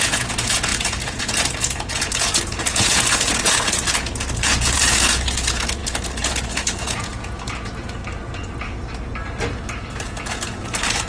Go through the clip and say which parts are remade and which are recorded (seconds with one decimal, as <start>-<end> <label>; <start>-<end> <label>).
0.0-8.0 remade; 8.0-10.0 recorded; 10.0-11.1 remade